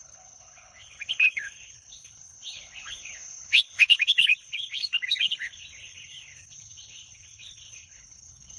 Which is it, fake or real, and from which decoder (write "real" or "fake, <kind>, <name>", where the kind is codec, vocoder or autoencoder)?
fake, codec, HILCodec